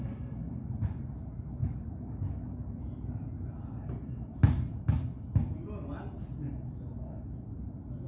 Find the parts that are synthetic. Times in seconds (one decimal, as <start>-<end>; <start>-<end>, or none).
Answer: 1.6-2.8